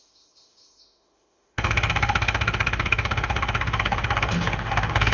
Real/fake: fake